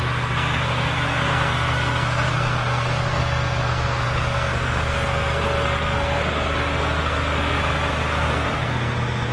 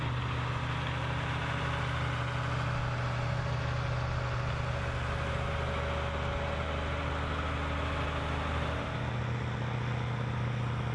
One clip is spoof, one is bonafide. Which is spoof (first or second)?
first